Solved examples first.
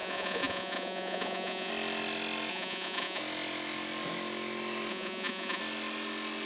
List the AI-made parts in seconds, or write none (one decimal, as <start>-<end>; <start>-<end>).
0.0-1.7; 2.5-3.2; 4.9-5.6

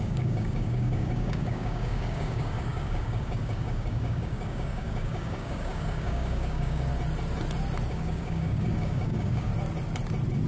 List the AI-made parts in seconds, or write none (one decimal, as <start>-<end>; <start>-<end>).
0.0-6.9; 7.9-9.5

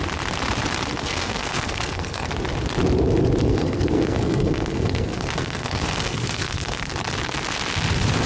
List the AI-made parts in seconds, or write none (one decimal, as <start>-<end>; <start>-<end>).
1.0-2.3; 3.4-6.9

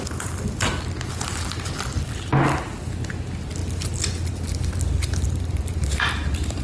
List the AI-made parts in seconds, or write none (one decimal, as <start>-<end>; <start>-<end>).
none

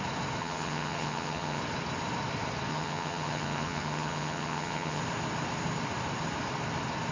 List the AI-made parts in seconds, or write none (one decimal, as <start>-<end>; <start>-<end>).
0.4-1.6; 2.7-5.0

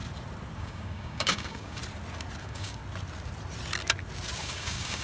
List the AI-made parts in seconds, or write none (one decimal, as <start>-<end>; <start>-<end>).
0.6-1.8; 2.4-2.8; 4.4-5.0

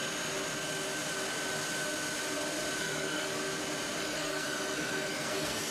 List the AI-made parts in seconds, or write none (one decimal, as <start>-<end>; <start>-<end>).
2.8-3.4; 4.0-5.7